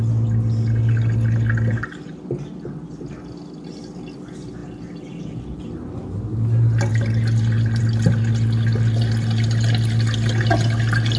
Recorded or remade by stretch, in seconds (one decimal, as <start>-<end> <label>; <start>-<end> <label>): 0.0-11.2 recorded